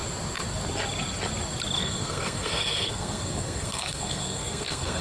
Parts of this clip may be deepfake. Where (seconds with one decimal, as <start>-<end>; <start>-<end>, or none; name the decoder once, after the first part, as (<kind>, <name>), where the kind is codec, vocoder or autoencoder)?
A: 1.8-5.0 (codec, SNAC)